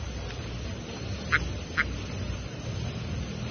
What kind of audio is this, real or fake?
real